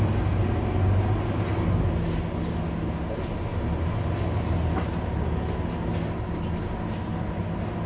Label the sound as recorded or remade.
recorded